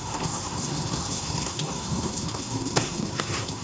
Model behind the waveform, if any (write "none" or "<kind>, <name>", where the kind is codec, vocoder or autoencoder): codec, SNAC